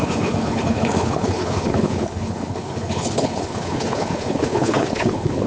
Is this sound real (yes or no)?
no